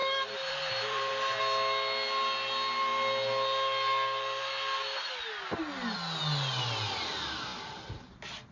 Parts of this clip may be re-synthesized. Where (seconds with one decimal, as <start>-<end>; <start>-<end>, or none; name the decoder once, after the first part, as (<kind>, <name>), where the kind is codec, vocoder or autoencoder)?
0.0-1.4 (vocoder, BigVGAN v2)

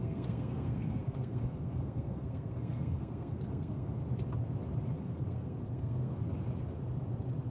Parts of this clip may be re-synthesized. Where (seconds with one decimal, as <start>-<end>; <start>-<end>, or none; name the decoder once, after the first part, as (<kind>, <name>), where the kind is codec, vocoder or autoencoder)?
0.0-4.0 (codec, SNAC); 5.0-6.2